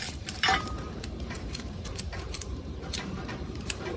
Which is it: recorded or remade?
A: remade